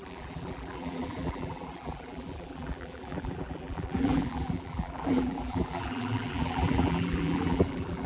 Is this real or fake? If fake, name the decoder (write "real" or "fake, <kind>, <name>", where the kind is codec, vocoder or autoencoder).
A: fake, vocoder, BigVGAN v2